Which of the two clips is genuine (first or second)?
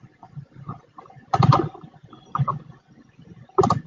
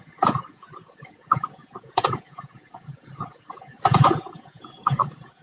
first